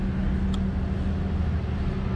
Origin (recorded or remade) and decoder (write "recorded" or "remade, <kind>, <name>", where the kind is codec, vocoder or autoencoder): recorded